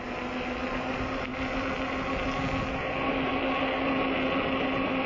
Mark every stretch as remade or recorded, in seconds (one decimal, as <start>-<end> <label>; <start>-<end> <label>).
0.0-5.1 recorded